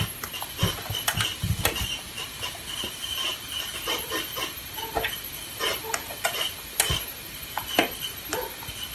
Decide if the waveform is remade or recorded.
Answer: recorded